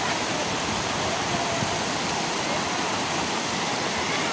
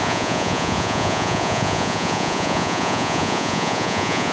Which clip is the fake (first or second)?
second